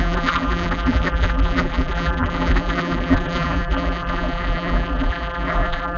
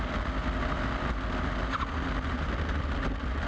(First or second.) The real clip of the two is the second